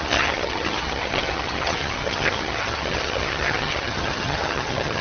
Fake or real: fake